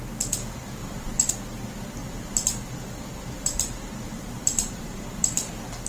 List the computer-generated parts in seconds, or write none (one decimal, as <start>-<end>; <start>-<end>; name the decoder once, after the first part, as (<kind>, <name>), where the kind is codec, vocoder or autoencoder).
0.8-1.3 (vocoder, BigVGAN v2); 2.0-5.5